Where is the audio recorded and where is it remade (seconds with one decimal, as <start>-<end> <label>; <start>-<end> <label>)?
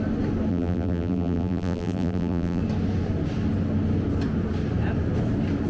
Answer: 0.0-0.5 recorded; 0.5-2.6 remade; 2.6-5.7 recorded